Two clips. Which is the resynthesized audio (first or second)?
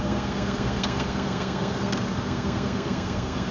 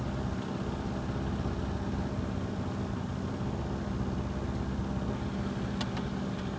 first